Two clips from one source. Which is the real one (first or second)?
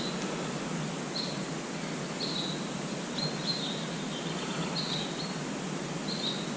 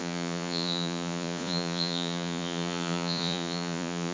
first